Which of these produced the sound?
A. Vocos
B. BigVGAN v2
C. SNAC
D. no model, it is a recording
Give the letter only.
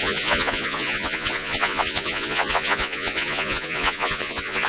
A